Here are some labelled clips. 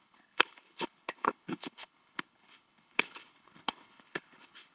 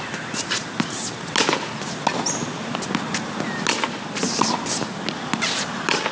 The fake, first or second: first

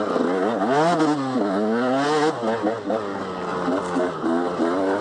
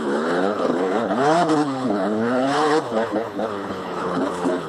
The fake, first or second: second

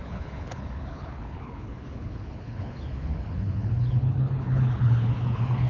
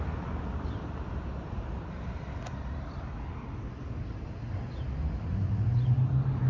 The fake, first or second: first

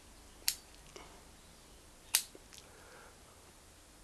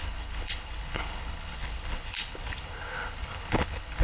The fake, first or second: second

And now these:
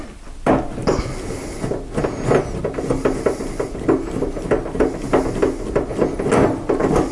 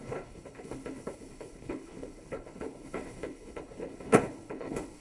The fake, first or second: second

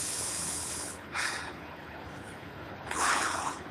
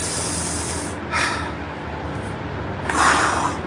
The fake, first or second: first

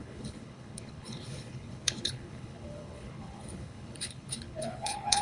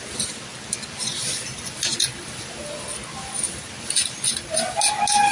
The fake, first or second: first